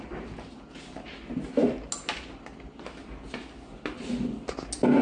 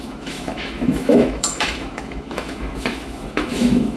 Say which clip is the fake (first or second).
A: second